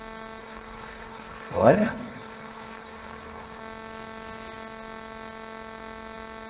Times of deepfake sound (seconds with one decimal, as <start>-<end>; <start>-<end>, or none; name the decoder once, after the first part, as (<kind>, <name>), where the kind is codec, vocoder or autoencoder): 0.4-3.6 (codec, HILCodec)

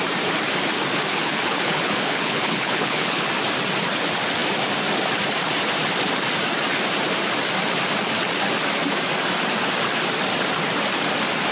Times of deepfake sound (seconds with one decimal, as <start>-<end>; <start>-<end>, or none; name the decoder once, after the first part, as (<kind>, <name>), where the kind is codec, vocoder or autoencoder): 1.1-3.3 (codec, HILCodec)

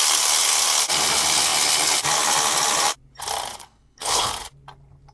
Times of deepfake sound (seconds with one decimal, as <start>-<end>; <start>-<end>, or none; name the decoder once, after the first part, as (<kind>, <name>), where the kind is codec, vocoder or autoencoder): 3.5-4.3 (codec, HILCodec)

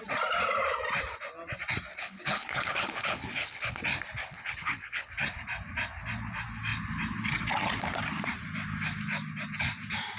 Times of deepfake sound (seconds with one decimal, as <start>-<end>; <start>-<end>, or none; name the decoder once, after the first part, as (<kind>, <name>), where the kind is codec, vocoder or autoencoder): 1.9-3.8 (codec, HILCodec); 4.2-5.1